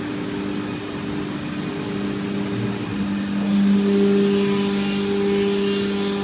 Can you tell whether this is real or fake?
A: real